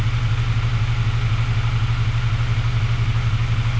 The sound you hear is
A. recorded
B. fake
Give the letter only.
A